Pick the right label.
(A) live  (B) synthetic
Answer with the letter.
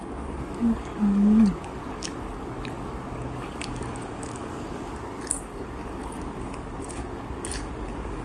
B